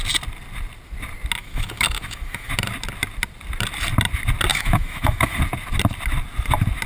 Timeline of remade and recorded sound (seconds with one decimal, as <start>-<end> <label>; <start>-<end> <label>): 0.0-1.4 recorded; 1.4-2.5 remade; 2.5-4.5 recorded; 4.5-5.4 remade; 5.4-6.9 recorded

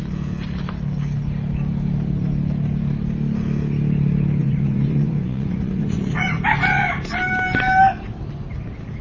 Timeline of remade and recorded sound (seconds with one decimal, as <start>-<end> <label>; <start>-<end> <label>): 0.0-4.4 recorded; 4.4-6.4 remade; 6.4-9.0 recorded

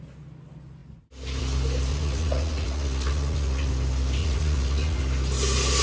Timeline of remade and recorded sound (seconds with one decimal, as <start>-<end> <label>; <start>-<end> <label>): 0.0-1.9 recorded; 1.9-3.7 remade; 3.7-4.2 recorded; 4.2-5.0 remade; 5.0-5.8 recorded